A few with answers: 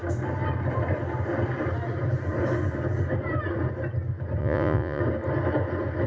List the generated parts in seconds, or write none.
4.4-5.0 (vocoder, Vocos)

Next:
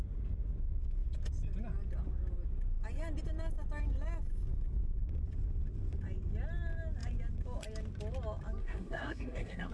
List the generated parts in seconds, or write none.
8.6-9.7 (codec, SNAC)

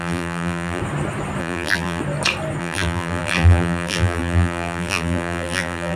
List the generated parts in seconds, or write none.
0.0-0.8 (vocoder, BigVGAN v2); 1.4-2.0; 2.6-6.0

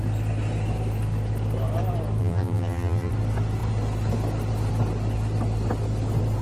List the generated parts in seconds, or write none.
2.2-3.1 (vocoder, BigVGAN v2)

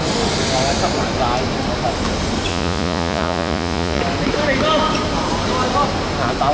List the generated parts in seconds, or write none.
2.5-4.0 (vocoder, Vocos)

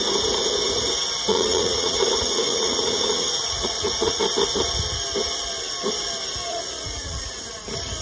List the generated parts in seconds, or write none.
1.3-4.2 (vocoder, Vocos); 6.5-7.6